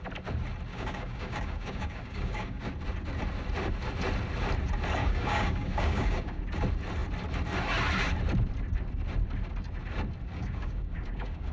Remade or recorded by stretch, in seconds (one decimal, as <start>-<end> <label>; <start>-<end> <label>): 0.0-0.7 recorded; 0.7-2.6 remade; 2.6-5.0 recorded; 5.0-6.4 remade; 6.4-10.3 recorded; 10.3-11.5 remade

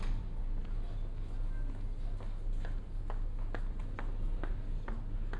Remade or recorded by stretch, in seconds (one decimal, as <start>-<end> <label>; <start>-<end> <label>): 0.0-5.4 recorded

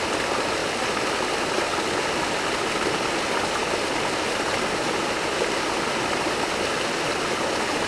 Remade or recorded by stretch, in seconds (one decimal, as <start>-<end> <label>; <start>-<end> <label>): 0.0-7.9 recorded

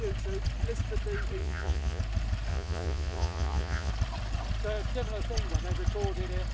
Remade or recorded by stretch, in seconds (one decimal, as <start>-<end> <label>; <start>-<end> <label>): 0.0-1.4 recorded; 1.4-2.0 remade; 2.0-2.5 recorded; 2.5-3.9 remade; 3.9-6.5 recorded